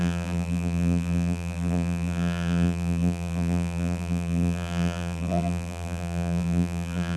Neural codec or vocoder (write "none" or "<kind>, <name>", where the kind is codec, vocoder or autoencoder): vocoder, BigVGAN v2